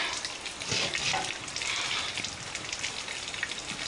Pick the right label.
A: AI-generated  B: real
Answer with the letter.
B